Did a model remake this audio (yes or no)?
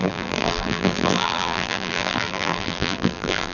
yes